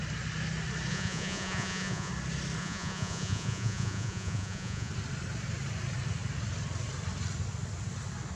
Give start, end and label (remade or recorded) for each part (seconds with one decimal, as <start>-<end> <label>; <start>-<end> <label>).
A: 0.0-0.9 recorded; 0.9-2.1 remade; 2.1-2.6 recorded; 2.6-4.9 remade; 4.9-8.3 recorded